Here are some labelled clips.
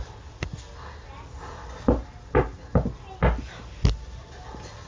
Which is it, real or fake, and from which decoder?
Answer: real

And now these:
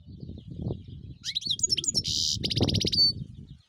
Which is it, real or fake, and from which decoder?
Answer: real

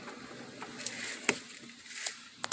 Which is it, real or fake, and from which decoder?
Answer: real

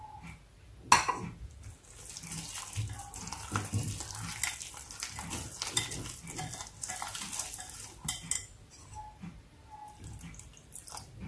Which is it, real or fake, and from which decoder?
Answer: real